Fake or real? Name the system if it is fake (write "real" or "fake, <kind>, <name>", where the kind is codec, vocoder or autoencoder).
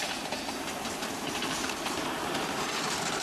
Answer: fake, vocoder, BigVGAN v2